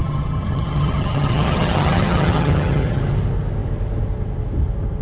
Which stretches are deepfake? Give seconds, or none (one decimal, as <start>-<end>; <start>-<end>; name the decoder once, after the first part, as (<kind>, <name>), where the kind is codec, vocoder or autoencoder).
0.0-3.0 (vocoder, HiFi-GAN)